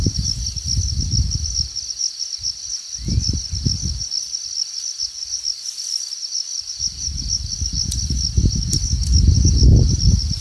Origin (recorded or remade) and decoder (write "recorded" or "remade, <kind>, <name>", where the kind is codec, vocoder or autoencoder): recorded